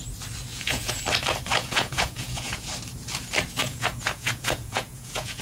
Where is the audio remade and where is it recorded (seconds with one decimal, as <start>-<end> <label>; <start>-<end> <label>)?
0.0-0.5 recorded; 0.5-1.0 remade; 1.0-1.5 recorded; 1.5-2.7 remade; 2.7-3.6 recorded; 3.6-5.4 remade

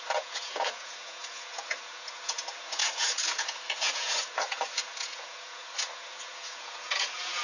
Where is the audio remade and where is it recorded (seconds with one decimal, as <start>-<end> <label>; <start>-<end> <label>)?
0.0-7.4 remade

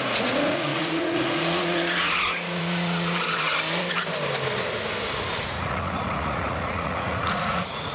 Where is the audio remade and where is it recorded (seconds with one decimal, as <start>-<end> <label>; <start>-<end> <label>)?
0.0-3.5 remade; 3.5-5.4 recorded; 5.4-7.9 remade